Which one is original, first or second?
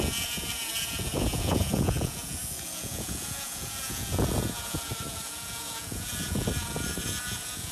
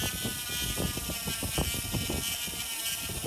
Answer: second